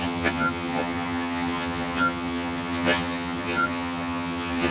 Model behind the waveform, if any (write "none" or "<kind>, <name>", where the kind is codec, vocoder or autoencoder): vocoder, HiFi-GAN